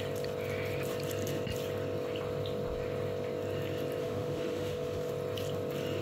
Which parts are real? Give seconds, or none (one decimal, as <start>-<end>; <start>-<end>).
0.0-4.0; 5.1-6.0